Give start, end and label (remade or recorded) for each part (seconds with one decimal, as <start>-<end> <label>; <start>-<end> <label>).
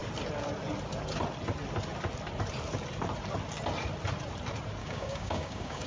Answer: 0.0-4.8 recorded; 4.8-5.9 remade